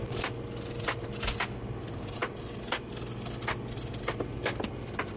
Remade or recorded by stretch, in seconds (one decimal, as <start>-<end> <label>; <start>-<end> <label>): 0.0-5.2 recorded